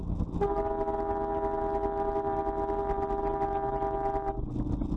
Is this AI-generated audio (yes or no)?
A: no